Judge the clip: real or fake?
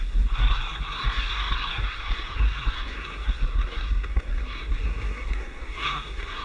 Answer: fake